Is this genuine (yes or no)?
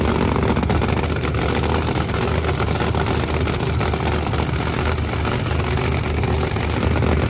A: yes